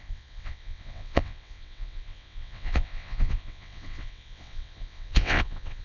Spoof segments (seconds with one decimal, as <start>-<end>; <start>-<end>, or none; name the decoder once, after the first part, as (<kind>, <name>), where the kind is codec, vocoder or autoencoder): 0.0-5.8 (vocoder, WaveNeXt)